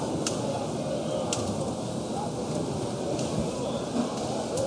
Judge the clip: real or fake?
real